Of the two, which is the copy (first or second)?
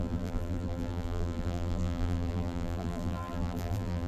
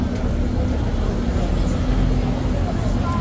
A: first